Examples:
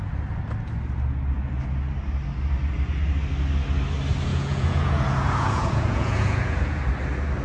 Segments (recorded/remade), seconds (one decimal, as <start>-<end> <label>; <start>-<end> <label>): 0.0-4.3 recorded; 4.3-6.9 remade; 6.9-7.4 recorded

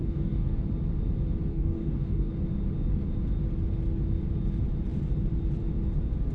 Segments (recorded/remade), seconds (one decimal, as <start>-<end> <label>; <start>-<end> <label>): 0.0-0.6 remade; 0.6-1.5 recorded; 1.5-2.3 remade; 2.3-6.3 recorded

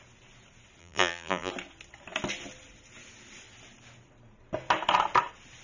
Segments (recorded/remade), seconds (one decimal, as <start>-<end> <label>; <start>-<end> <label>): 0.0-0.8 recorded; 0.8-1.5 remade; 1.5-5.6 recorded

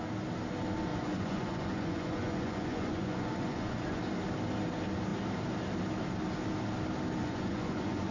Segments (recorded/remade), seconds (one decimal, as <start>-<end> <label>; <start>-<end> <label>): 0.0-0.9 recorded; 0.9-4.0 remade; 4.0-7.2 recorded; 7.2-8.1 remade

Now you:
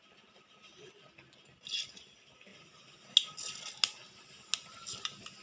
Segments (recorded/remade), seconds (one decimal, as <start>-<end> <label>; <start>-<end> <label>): 0.0-5.4 recorded

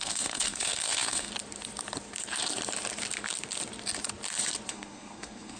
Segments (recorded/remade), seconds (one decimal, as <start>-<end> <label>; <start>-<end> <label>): 0.0-1.3 remade; 1.3-4.7 recorded; 4.7-5.6 remade